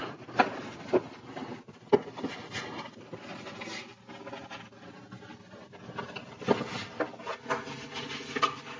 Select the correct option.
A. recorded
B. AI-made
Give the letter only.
A